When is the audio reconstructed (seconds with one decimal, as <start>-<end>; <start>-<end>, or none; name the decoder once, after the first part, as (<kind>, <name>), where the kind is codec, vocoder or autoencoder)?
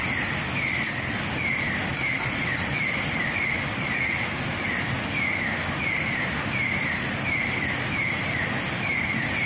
none